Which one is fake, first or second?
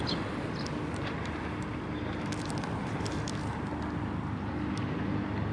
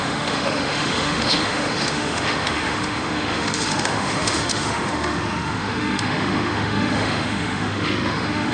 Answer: second